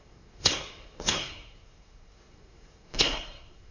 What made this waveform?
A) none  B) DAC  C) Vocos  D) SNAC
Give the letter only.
D